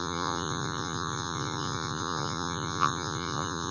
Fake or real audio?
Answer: fake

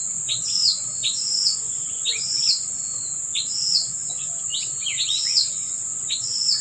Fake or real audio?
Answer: fake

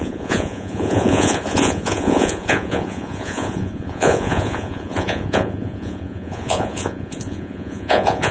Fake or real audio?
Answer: fake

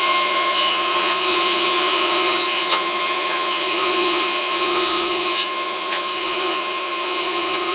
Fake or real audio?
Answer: fake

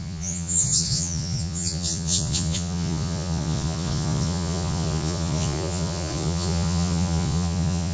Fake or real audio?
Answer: fake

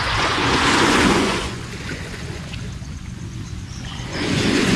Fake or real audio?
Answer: fake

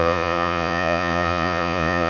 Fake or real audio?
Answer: fake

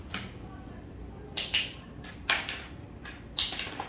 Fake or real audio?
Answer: real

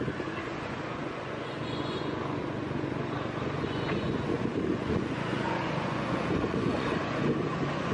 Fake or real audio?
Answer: fake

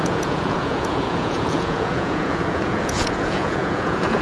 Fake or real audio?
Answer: fake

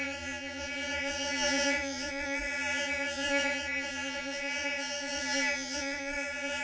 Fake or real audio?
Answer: fake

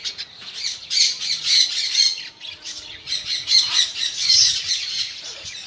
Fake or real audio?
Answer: fake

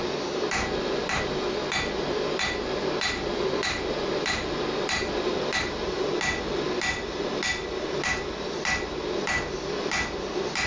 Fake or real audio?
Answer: real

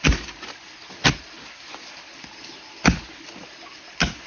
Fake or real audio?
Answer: real